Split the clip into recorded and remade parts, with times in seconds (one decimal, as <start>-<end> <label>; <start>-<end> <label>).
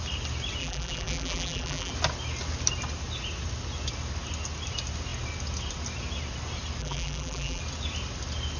0.0-0.6 recorded; 0.6-1.9 remade; 1.9-6.8 recorded; 6.8-7.6 remade; 7.6-8.6 recorded